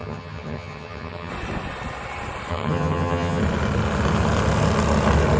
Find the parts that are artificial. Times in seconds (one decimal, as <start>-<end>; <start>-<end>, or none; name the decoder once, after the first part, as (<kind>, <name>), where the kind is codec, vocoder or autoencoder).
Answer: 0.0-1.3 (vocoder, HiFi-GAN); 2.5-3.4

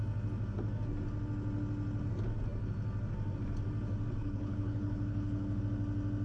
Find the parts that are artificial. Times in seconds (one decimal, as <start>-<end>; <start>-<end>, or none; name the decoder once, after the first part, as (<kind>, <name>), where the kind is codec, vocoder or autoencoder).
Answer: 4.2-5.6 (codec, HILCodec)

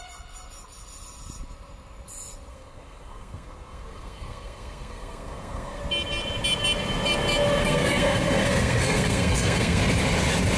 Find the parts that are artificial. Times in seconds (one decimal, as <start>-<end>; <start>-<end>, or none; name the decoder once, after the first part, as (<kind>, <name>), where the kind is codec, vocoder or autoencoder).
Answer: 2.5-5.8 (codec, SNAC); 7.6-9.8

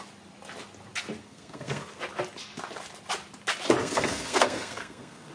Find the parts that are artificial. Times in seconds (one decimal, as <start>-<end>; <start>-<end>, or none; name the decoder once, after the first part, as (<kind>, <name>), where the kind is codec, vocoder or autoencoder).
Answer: 1.2-2.0 (codec, SNAC); 3.8-5.3